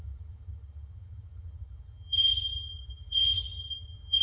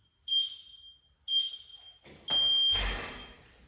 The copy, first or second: first